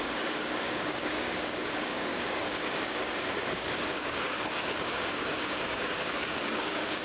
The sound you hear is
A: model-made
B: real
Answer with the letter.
A